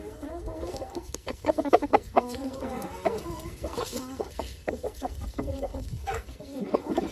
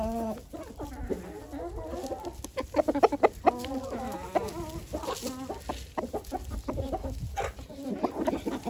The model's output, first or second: first